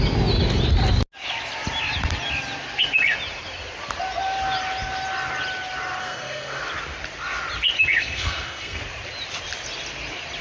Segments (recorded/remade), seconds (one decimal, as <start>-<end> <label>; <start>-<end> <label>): 0.0-6.0 recorded; 6.0-6.6 remade; 6.6-8.0 recorded; 8.0-8.8 remade; 8.8-10.4 recorded